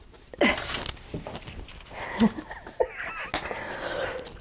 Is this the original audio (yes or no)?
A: yes